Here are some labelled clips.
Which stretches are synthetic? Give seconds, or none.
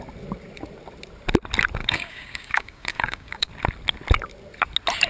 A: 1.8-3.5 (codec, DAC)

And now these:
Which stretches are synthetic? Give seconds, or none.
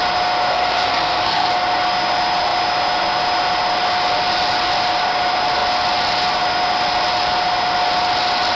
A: 0.5-1.5 (codec, SNAC)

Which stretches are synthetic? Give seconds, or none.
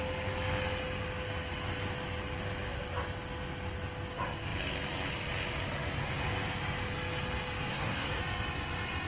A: 7.7-8.2 (codec, SNAC)